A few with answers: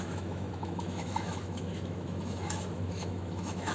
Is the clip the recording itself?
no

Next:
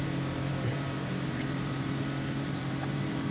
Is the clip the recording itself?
no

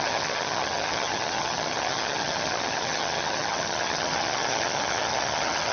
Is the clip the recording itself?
no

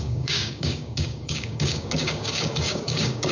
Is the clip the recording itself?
no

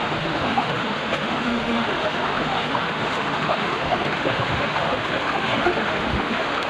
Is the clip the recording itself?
no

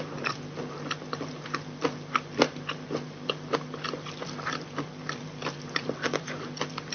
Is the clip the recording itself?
no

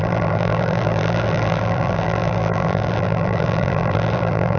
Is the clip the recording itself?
no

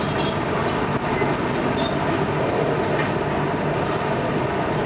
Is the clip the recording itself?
yes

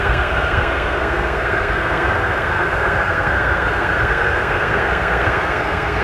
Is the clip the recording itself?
no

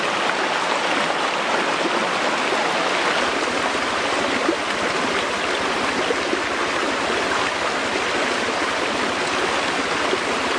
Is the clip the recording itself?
yes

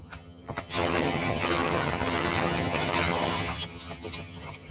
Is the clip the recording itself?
no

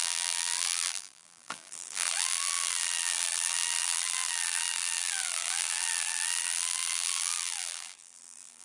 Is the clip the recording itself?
no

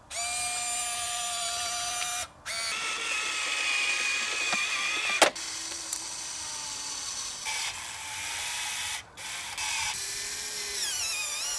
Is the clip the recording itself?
yes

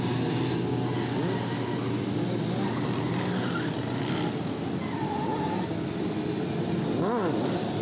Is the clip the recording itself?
yes